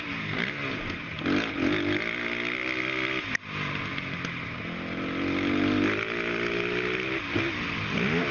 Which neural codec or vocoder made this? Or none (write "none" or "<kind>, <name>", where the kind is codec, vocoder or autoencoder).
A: none